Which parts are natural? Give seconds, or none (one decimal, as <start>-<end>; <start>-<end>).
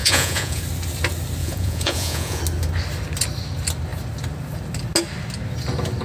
0.6-1.4; 2.4-6.0